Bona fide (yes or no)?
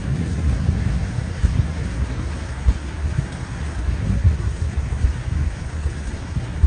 no